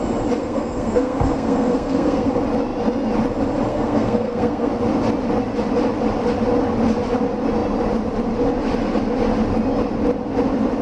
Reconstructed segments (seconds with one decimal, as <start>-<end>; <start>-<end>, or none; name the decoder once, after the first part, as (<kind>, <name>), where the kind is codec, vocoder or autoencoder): 0.4-2.3 (codec, SNAC); 3.7-4.7

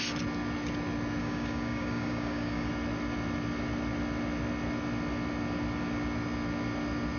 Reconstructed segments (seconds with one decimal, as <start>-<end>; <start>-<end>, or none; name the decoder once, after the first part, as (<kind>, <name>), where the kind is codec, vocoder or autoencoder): 1.2-2.7 (codec, DAC)